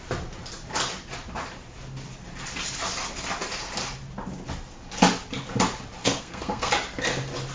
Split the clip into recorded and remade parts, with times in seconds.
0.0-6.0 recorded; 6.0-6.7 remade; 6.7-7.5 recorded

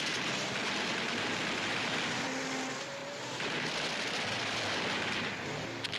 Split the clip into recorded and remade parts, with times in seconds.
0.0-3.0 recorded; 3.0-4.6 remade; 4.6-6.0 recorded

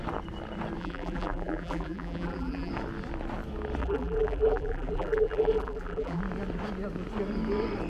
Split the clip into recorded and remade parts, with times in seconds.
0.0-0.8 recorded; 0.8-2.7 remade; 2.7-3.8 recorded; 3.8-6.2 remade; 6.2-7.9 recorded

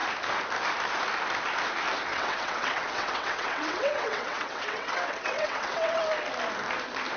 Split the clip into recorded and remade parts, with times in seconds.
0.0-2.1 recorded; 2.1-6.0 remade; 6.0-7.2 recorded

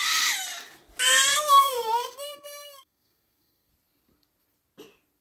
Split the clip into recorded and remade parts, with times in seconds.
0.0-1.3 recorded; 1.3-3.7 remade; 3.7-5.2 recorded

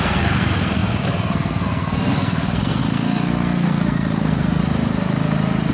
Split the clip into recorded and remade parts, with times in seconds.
0.0-4.6 remade; 4.6-5.7 recorded

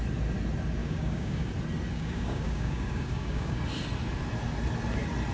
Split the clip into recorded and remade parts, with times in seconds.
0.0-0.8 recorded; 0.8-1.5 remade; 1.5-1.9 recorded; 1.9-3.6 remade; 3.6-5.3 recorded

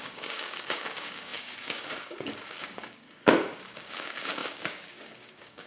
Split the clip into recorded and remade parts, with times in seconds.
0.0-5.7 remade